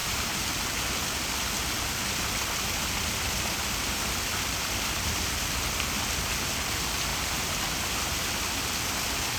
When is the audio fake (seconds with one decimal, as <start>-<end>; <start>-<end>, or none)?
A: 0.0-0.5; 7.1-7.6